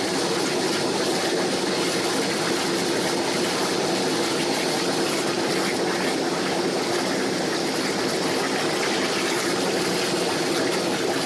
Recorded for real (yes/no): yes